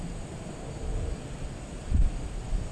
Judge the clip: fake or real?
real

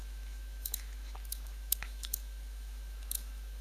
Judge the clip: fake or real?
fake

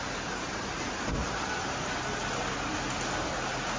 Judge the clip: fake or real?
real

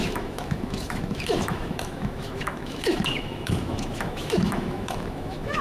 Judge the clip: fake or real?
fake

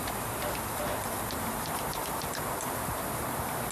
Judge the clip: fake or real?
real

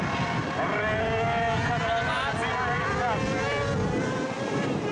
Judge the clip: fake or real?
real